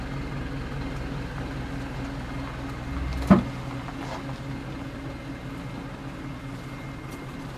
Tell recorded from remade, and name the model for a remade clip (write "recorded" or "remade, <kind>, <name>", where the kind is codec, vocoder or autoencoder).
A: recorded